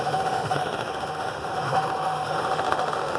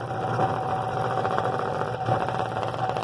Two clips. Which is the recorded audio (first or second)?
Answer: second